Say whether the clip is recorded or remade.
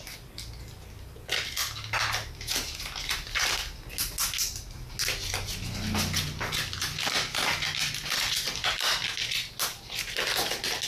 recorded